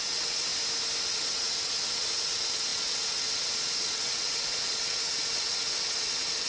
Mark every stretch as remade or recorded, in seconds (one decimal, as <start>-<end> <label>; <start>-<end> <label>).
0.0-0.5 remade; 0.5-1.0 recorded; 1.0-6.5 remade